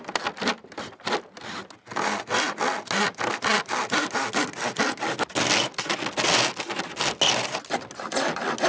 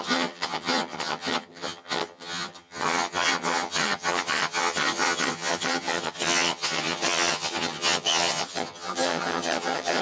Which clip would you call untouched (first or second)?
first